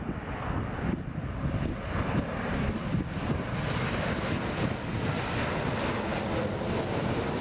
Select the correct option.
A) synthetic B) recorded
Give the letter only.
B